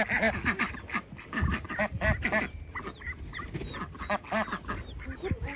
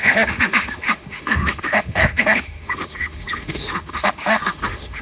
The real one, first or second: first